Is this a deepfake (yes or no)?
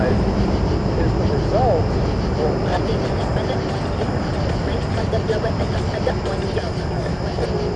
no